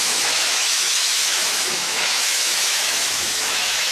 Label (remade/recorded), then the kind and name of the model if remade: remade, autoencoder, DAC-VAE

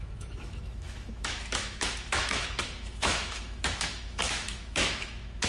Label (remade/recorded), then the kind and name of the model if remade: remade, autoencoder, DAC-VAE